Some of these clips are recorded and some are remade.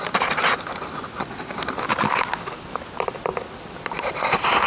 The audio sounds recorded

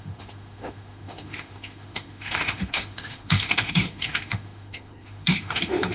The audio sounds remade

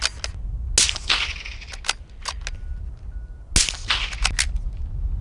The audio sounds recorded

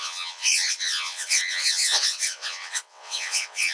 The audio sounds remade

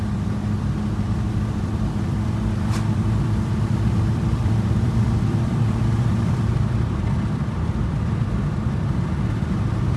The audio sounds remade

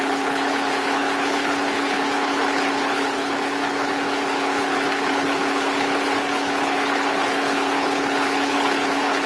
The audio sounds remade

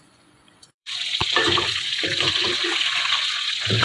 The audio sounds remade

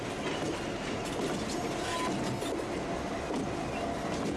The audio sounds recorded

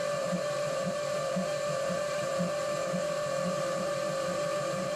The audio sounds remade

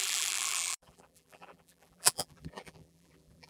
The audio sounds remade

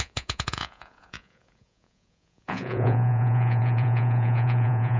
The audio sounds remade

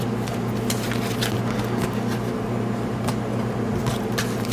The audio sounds recorded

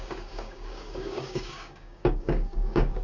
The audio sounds remade